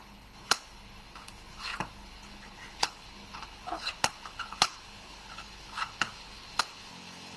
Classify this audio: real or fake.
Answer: fake